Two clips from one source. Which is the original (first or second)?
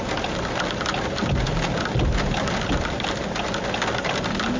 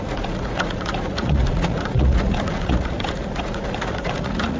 first